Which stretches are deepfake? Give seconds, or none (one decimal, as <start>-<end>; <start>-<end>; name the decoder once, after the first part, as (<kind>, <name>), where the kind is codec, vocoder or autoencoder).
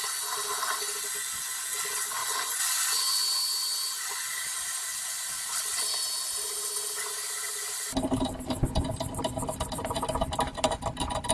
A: none